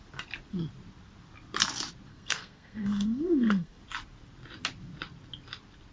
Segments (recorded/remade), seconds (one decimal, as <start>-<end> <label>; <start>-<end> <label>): 0.0-2.1 recorded; 2.1-3.8 remade; 3.8-5.9 recorded